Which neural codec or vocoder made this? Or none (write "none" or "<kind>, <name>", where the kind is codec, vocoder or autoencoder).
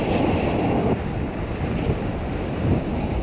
none